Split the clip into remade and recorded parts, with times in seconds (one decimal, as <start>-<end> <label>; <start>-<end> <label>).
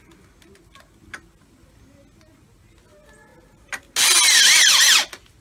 0.0-5.4 recorded